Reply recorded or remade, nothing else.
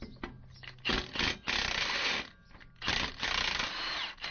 recorded